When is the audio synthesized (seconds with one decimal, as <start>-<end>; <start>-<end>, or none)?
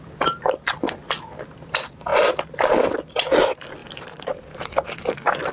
3.8-4.7